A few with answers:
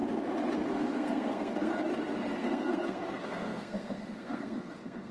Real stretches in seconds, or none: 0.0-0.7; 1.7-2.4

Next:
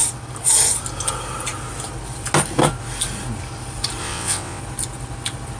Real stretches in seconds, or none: 0.0-4.0; 4.6-5.6

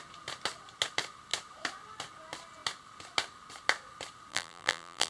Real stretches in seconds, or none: 0.0-4.3

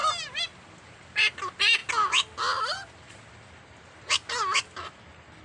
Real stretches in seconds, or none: 0.0-5.4